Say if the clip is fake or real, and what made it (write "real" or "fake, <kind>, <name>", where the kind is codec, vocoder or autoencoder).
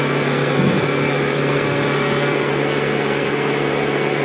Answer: fake, codec, SNAC